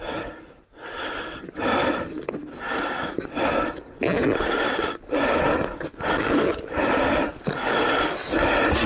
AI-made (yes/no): no